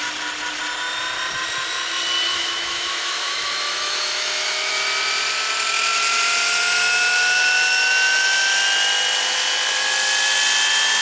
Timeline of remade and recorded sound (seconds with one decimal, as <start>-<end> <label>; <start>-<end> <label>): 0.0-2.3 recorded; 2.3-4.7 remade; 4.7-11.0 recorded

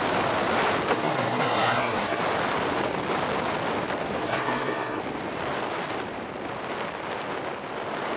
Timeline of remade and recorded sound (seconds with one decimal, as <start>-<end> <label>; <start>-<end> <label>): 0.0-0.9 recorded; 0.9-2.2 remade; 2.2-4.2 recorded; 4.2-5.0 remade; 5.0-8.2 recorded

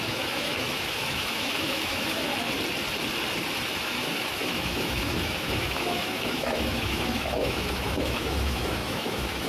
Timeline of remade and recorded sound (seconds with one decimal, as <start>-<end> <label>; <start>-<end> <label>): 0.0-2.3 remade; 2.3-3.8 recorded; 3.8-9.5 remade

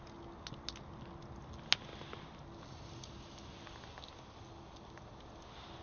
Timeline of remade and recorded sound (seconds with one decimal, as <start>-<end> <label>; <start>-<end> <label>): 0.0-5.8 recorded